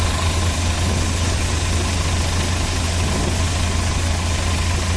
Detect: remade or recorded recorded